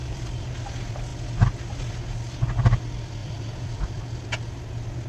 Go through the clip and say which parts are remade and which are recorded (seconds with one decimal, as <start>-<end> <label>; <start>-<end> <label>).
0.0-0.5 remade; 0.5-3.2 recorded; 3.2-4.0 remade; 4.0-5.1 recorded